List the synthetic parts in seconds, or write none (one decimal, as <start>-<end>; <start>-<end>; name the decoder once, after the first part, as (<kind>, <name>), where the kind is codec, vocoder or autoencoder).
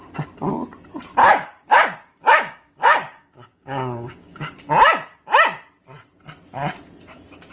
1.2-4.7 (codec, DAC)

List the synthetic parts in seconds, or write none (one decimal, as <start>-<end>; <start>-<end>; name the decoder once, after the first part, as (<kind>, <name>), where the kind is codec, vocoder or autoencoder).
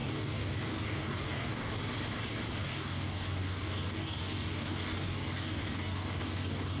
0.0-1.8 (codec, DAC); 2.6-6.8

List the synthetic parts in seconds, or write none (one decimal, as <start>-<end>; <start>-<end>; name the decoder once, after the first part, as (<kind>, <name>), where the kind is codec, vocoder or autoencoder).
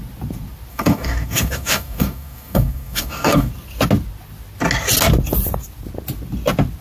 0.7-3.5 (codec, DAC)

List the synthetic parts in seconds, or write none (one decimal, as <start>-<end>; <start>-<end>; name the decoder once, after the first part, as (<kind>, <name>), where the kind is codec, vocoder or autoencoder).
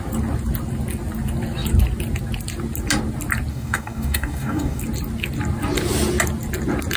3.5-4.8 (codec, DAC)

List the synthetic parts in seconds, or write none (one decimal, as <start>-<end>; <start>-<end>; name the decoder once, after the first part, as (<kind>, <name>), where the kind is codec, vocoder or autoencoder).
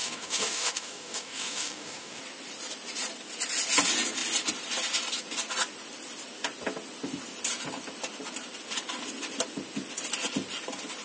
0.0-2.2 (codec, DAC)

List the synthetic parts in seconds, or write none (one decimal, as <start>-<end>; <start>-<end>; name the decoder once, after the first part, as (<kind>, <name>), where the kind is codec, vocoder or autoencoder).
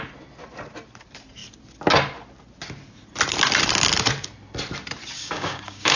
5.2-6.0 (codec, DAC)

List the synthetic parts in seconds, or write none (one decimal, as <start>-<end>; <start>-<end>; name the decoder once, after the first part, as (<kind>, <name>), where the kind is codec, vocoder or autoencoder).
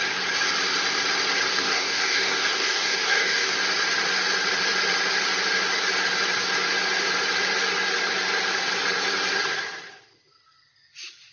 1.5-3.5 (codec, DAC)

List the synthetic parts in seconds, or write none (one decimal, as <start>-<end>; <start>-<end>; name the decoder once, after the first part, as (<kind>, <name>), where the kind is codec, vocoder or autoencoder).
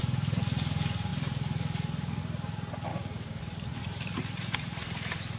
2.9-3.4 (codec, DAC)